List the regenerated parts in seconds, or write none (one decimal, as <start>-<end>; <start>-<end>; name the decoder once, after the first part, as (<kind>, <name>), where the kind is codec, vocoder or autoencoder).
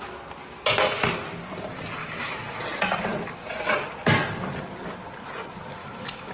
2.0-2.6 (autoencoder, DAC-VAE); 5.8-6.3